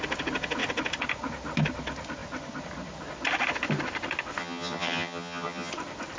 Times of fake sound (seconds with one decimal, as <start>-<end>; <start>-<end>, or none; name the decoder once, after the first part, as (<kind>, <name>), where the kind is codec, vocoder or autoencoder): 4.4-5.7 (vocoder, HiFi-GAN)